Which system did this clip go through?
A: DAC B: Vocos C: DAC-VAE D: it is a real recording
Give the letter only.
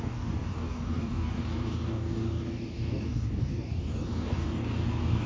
A